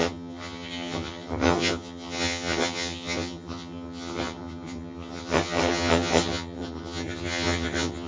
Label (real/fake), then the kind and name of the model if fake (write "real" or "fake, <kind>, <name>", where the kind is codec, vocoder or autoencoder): fake, vocoder, HiFi-GAN